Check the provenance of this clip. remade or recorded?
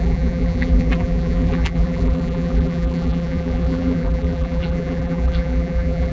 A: remade